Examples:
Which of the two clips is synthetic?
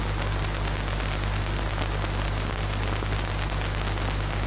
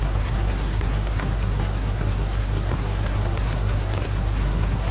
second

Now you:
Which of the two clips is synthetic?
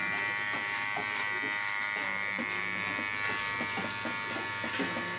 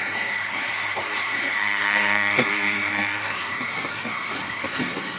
second